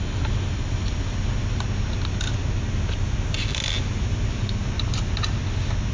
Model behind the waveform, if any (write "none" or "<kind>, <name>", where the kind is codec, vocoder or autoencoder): none